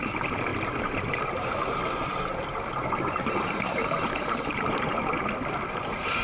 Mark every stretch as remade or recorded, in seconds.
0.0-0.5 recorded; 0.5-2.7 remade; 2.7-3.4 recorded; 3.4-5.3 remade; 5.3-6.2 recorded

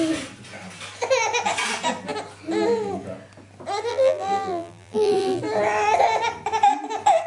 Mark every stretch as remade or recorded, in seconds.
0.0-3.9 recorded; 3.9-5.4 remade; 5.4-7.3 recorded

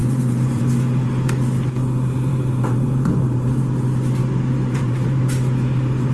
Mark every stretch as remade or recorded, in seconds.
0.0-0.6 remade; 0.6-2.3 recorded; 2.3-3.6 remade; 3.6-4.2 recorded; 4.2-5.2 remade; 5.2-6.1 recorded

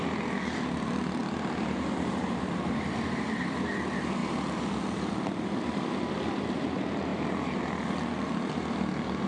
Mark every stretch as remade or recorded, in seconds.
0.0-1.2 remade; 1.2-2.1 recorded; 2.1-9.3 remade

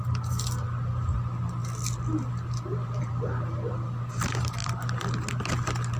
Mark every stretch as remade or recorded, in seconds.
0.0-6.0 remade

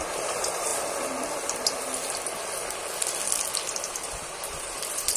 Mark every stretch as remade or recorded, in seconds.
0.0-0.7 remade; 0.7-3.8 recorded; 3.8-5.2 remade

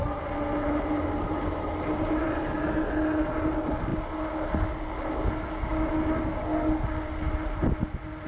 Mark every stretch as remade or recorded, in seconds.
0.0-8.3 recorded